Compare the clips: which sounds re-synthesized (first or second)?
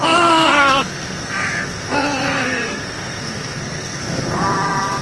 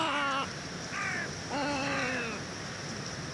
first